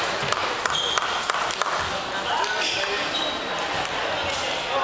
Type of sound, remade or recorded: recorded